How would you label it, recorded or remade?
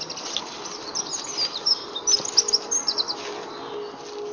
recorded